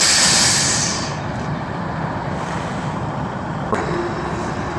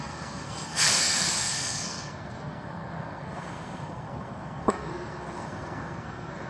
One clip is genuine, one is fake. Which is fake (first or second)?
second